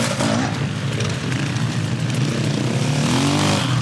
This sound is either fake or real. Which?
fake